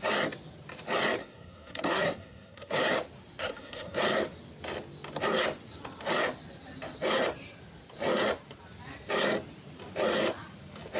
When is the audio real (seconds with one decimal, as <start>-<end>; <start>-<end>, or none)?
0.0-1.2; 2.8-3.4; 4.0-11.0

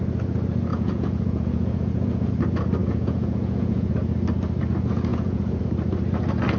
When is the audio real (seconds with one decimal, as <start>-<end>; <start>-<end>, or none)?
0.0-0.7; 2.3-2.8; 3.9-5.1; 5.6-6.6

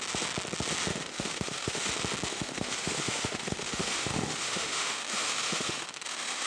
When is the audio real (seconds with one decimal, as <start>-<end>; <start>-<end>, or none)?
0.0-0.9; 1.9-2.3

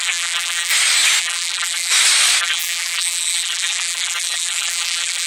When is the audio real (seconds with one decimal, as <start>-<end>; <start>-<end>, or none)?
0.7-1.2; 1.9-2.4

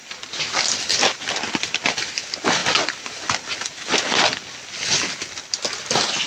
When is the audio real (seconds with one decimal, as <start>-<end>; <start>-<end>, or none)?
0.0-6.3

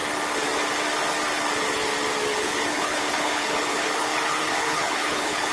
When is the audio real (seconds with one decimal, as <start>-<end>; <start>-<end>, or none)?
0.0-2.3

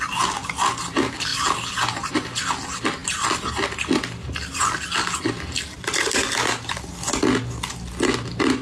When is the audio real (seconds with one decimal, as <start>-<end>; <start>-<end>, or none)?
0.0-8.6